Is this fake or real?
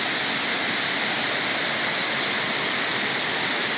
real